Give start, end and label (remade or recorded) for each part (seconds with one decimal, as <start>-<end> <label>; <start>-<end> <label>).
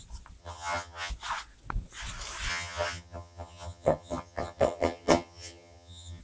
0.0-0.4 recorded; 0.4-1.1 remade; 1.1-2.5 recorded; 2.5-6.2 remade